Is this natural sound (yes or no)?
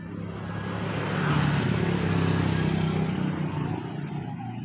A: yes